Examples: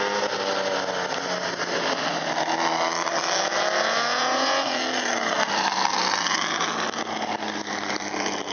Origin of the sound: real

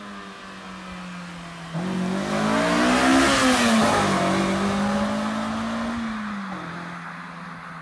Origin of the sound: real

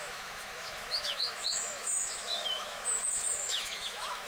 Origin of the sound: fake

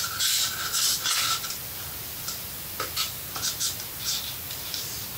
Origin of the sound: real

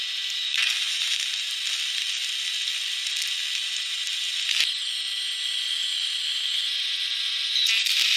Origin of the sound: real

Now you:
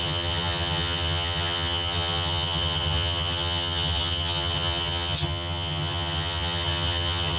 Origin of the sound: fake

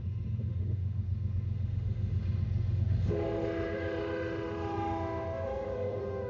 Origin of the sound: fake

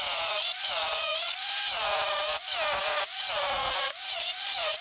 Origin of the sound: fake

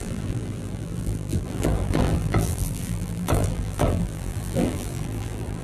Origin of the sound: fake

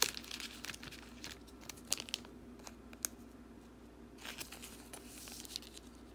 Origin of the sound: real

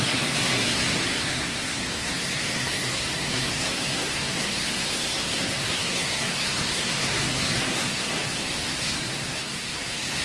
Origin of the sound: fake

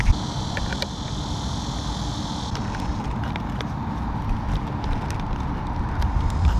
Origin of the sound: real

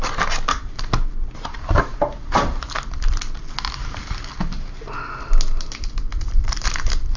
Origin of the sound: real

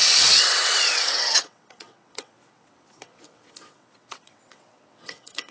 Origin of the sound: fake